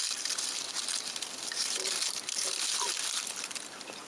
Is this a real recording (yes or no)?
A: no